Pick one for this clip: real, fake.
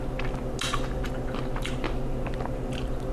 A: real